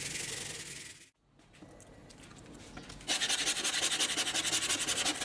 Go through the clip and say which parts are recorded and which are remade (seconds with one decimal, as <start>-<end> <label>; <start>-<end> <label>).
0.0-5.2 recorded